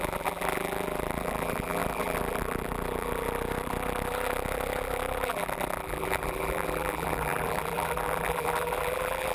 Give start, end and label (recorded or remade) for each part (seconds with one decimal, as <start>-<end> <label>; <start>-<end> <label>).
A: 0.0-9.3 remade